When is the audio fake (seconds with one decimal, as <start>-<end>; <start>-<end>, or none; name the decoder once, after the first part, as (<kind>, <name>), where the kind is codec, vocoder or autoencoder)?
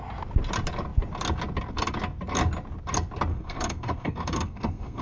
3.3-5.0 (codec, SNAC)